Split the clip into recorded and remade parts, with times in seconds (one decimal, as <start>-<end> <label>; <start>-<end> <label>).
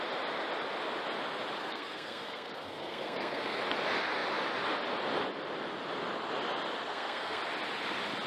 0.0-1.6 recorded; 1.6-3.6 remade; 3.6-6.8 recorded; 6.8-7.4 remade; 7.4-8.3 recorded